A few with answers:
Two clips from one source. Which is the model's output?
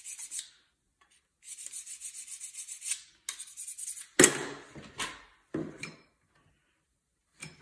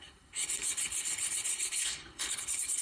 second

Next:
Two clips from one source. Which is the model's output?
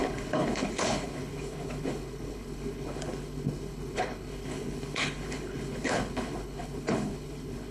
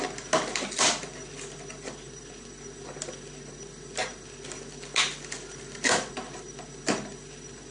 first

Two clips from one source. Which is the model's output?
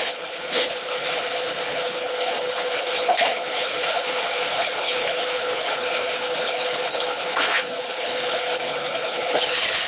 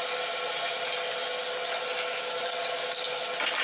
first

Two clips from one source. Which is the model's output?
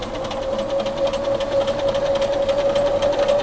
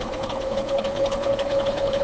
second